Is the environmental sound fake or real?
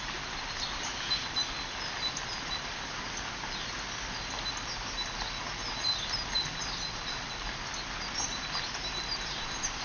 real